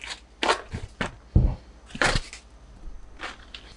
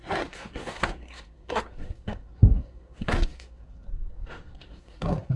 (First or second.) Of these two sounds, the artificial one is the second